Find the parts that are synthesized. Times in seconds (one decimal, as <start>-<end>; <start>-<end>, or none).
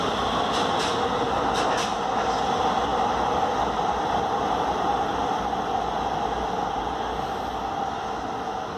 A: none